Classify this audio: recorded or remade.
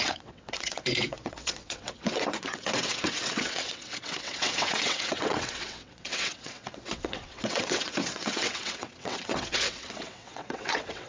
remade